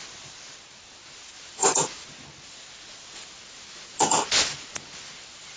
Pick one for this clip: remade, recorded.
recorded